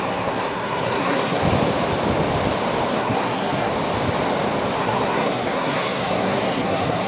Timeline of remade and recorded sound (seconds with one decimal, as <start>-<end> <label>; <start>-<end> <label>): 0.0-1.4 remade; 1.4-2.9 recorded; 2.9-3.7 remade; 3.7-4.8 recorded; 4.8-7.1 remade